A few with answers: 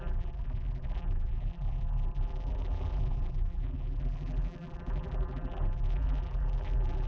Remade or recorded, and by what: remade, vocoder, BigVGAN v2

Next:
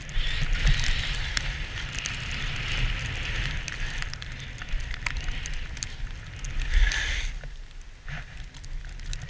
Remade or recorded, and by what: recorded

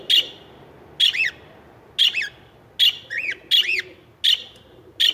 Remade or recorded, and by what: recorded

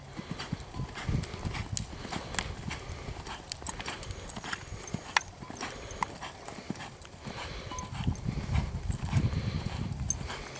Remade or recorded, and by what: recorded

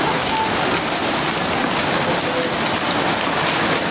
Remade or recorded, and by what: recorded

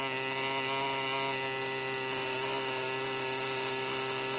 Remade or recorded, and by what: recorded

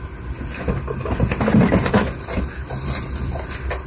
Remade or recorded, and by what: recorded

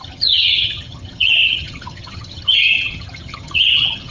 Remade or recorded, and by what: remade, vocoder, HiFi-GAN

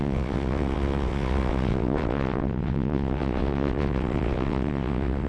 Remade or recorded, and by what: remade, vocoder, WaveNeXt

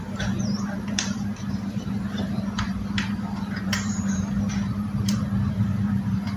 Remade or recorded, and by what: remade, vocoder, BigVGAN v2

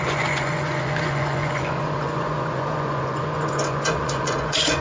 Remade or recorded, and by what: remade, vocoder, Vocos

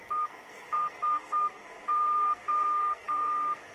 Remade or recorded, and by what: remade, codec, SNAC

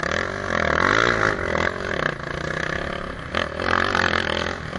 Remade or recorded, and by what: recorded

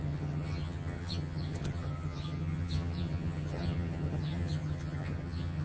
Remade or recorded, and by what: remade, vocoder, HiFi-GAN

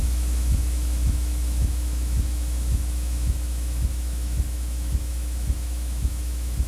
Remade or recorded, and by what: remade, autoencoder, DAC-VAE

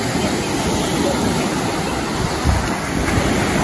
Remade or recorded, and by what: recorded